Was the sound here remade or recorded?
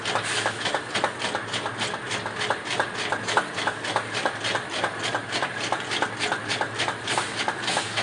recorded